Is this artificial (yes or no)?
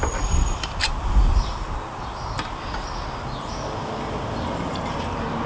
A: no